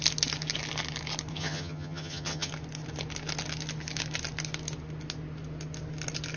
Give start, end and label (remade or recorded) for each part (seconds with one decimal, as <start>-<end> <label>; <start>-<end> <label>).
0.0-1.3 recorded; 1.3-2.5 remade; 2.5-6.4 recorded